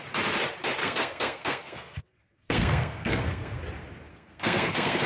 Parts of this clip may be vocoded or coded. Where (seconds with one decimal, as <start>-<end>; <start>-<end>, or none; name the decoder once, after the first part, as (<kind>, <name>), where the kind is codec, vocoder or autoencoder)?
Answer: 0.8-3.6 (codec, SNAC); 4.1-5.1